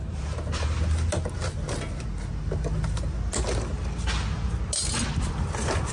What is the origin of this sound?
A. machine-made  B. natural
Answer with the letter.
B